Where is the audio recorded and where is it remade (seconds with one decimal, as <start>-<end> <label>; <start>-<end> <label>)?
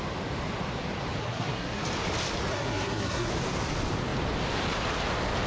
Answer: 0.0-1.2 recorded; 1.2-1.8 remade; 1.8-2.5 recorded; 2.5-3.3 remade; 3.3-5.5 recorded